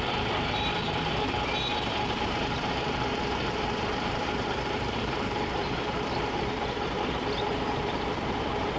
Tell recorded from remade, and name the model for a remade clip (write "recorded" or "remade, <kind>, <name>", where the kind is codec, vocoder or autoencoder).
remade, vocoder, BigVGAN v2